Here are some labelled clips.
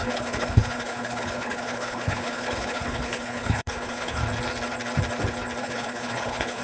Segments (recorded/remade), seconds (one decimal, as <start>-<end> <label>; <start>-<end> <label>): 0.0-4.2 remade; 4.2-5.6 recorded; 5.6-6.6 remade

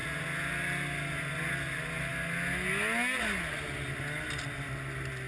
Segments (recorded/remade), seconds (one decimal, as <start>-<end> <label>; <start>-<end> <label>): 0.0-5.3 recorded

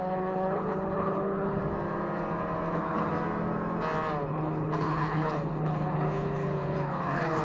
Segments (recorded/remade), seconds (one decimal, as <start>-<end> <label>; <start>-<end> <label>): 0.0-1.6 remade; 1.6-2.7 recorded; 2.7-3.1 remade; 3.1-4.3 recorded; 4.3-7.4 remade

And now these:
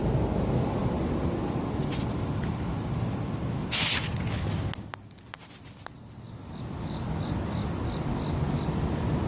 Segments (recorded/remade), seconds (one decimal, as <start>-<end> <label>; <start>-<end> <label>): 0.0-9.3 recorded

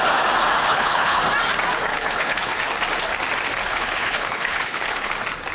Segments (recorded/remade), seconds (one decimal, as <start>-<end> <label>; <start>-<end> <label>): 0.0-0.6 recorded; 0.6-1.2 remade; 1.2-1.9 recorded; 1.9-2.6 remade; 2.6-3.6 recorded; 3.6-5.1 remade; 5.1-5.5 recorded

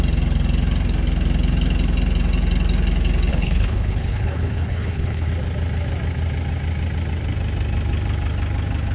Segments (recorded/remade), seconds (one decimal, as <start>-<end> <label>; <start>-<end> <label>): 0.0-3.3 recorded; 3.3-5.3 remade; 5.3-8.9 recorded

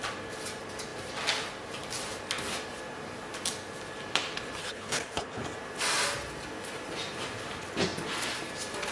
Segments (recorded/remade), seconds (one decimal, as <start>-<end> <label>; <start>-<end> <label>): 0.0-4.6 recorded; 4.6-5.4 remade; 5.4-8.9 recorded